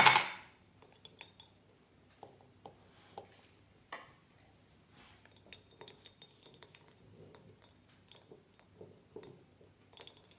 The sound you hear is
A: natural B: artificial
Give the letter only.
A